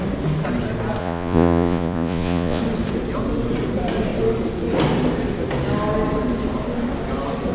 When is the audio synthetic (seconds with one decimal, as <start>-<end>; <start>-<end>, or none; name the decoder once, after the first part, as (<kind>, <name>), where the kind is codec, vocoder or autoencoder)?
1.0-2.6 (vocoder, Vocos)